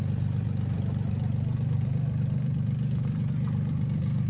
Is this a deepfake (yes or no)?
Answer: yes